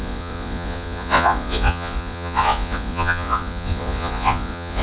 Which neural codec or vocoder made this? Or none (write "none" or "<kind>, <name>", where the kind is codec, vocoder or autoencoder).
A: vocoder, Vocos